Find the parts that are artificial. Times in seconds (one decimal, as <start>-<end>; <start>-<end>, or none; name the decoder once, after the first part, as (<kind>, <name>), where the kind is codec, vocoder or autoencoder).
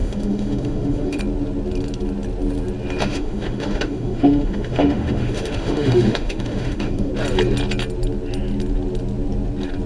0.0-1.2 (autoencoder, DAC-VAE); 3.0-7.1